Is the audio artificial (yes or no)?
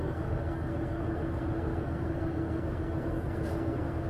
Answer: yes